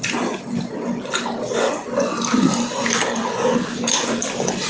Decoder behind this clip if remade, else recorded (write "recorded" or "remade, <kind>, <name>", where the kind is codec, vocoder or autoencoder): remade, vocoder, BigVGAN v2